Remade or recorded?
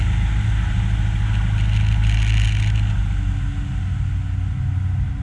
recorded